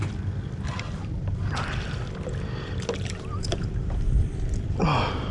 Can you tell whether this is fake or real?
real